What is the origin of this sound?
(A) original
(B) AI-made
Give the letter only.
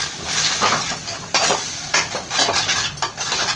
A